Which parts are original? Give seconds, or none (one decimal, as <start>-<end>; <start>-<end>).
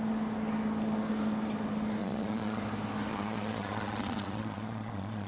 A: 0.0-2.0; 2.6-3.1